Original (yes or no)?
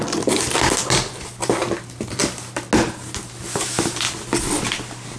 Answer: yes